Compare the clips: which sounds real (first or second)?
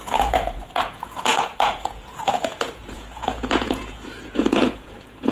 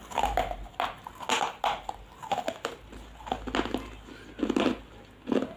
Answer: second